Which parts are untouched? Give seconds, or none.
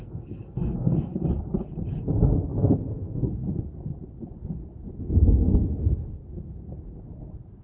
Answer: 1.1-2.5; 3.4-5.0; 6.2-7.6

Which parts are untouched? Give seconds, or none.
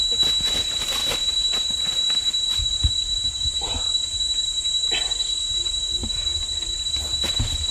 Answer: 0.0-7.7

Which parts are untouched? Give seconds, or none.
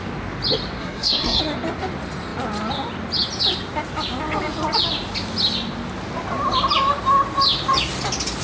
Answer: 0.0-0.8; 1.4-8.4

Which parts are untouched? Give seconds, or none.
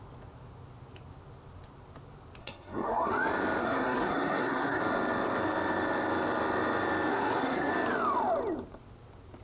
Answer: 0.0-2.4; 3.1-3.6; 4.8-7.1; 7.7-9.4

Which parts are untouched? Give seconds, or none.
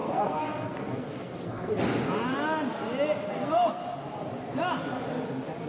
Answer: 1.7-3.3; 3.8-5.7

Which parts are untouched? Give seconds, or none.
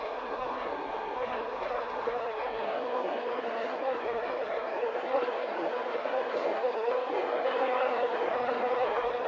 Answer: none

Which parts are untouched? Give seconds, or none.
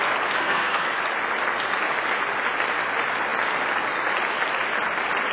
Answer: 0.0-0.4; 0.9-5.3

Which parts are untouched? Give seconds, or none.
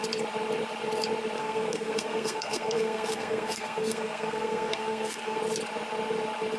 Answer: 0.0-1.4; 5.4-6.6